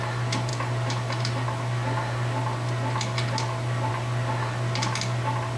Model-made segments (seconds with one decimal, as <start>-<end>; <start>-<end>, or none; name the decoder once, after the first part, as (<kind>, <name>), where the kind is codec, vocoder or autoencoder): none